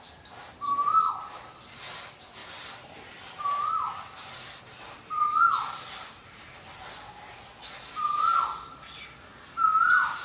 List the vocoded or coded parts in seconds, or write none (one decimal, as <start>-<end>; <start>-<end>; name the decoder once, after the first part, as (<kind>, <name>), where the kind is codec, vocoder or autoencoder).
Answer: 2.4-4.6 (vocoder, BigVGAN v2)